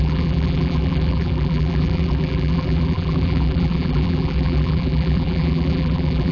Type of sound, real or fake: fake